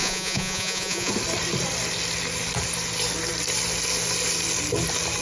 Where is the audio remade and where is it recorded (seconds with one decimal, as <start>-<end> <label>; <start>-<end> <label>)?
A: 0.0-1.1 remade; 1.1-5.2 recorded